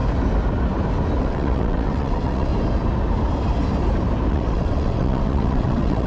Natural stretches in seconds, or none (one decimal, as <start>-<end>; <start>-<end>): 0.0-1.2; 2.5-4.3